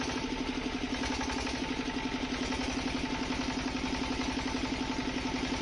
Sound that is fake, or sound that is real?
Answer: real